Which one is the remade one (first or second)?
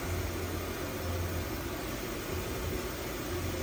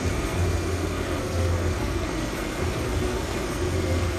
second